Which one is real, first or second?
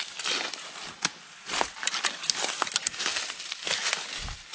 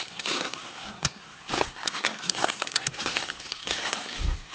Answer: first